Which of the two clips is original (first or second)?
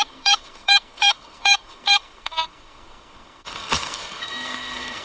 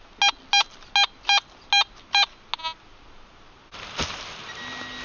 second